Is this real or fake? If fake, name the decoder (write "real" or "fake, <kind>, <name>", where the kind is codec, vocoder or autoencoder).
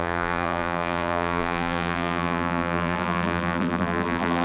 fake, vocoder, BigVGAN v2